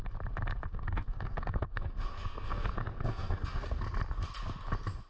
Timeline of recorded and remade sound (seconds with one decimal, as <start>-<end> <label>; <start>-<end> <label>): 0.0-0.7 recorded; 0.7-3.8 remade; 3.8-5.1 recorded